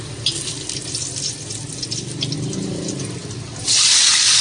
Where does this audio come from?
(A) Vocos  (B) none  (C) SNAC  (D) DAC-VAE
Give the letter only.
B